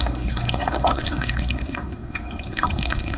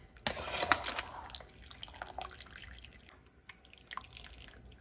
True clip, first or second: second